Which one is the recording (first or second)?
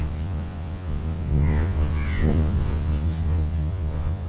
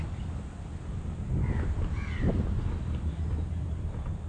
second